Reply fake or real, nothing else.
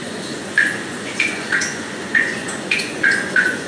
fake